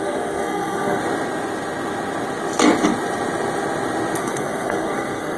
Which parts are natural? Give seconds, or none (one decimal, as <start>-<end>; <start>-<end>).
1.0-4.2